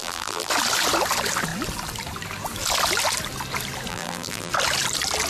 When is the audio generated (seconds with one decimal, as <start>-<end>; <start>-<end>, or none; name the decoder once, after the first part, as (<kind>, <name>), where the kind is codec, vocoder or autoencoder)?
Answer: 0.0-0.5 (vocoder, BigVGAN v2); 3.9-4.5